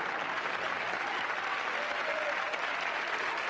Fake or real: real